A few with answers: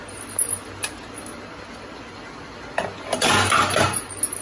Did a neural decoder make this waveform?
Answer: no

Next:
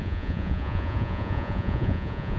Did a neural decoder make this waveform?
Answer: yes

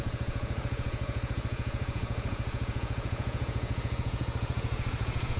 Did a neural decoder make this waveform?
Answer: yes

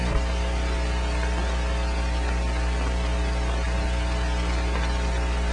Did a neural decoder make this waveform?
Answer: no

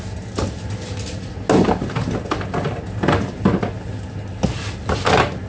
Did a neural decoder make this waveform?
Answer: no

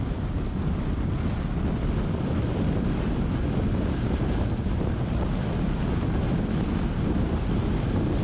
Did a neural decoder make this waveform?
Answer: no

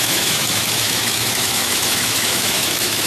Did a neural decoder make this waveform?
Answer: yes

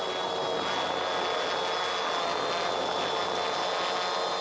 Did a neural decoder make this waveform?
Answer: no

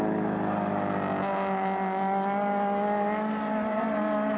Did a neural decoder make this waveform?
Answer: no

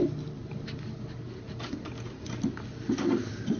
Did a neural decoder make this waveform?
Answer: no